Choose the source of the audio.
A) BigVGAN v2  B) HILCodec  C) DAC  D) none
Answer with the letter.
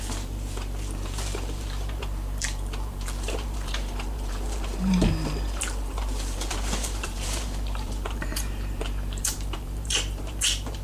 A